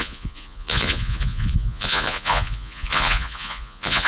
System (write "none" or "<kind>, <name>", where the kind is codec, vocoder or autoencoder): vocoder, Vocos